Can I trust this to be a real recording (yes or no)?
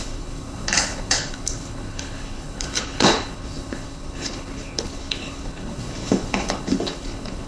no